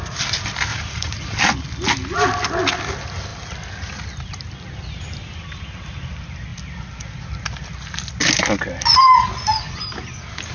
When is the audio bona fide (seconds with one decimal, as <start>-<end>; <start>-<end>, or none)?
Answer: 0.0-0.7; 1.4-10.5